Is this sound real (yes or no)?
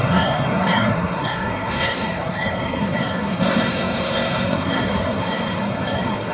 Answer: no